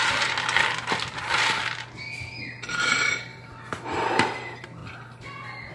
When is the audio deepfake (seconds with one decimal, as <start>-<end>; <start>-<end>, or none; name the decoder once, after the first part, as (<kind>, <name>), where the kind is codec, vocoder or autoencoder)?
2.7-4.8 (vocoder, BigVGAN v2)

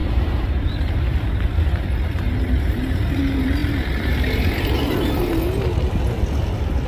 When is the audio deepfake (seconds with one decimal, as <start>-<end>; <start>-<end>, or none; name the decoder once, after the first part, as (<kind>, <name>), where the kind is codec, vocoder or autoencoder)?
0.0-3.2 (vocoder, BigVGAN v2)

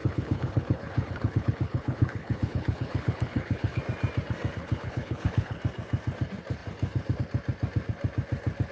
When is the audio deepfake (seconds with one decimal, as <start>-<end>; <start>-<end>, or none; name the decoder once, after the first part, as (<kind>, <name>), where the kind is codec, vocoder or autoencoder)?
0.0-3.8 (codec, HILCodec); 4.6-5.6

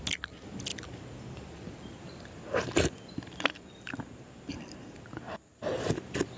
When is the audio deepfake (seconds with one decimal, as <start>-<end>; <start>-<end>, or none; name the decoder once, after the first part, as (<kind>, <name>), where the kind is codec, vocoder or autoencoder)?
none

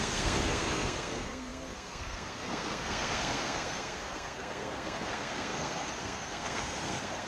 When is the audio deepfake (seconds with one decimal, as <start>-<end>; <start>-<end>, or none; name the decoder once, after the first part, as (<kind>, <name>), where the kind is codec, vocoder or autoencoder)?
0.0-7.3 (codec, SNAC)

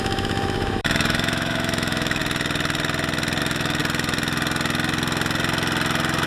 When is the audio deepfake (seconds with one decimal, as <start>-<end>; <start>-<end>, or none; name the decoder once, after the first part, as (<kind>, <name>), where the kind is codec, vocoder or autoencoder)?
0.0-2.2 (autoencoder, DAC-VAE); 3.4-3.8

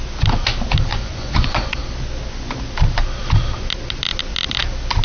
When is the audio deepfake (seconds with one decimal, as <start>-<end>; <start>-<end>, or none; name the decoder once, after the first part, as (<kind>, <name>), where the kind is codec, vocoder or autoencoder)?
0.9-1.8 (vocoder, Vocos)

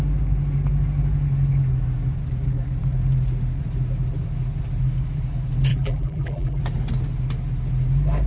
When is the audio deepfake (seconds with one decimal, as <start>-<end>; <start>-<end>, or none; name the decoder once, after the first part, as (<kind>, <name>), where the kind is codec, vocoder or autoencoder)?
5.7-6.6 (vocoder, BigVGAN v2)